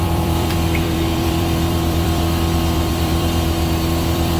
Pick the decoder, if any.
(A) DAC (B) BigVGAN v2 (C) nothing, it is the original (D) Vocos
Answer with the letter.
B